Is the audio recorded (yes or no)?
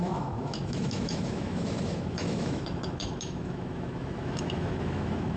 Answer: no